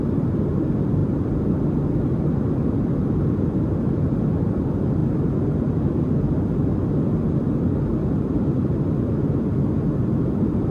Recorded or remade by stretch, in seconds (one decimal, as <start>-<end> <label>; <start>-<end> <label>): 0.0-5.0 remade; 5.0-8.8 recorded; 8.8-10.7 remade